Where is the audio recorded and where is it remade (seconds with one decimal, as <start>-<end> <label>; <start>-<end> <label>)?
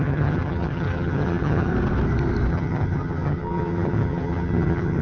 0.0-1.7 remade; 1.7-2.5 recorded; 2.5-5.0 remade